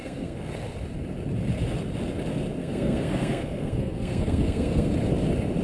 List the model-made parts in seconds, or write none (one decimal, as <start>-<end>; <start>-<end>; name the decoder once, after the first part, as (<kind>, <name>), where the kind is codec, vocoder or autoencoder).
0.0-0.5 (codec, SNAC); 2.6-4.9